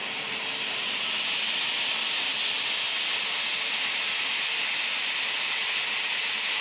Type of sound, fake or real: real